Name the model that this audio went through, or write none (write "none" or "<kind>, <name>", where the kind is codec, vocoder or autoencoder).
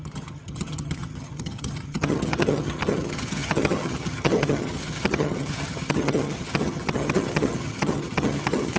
vocoder, HiFi-GAN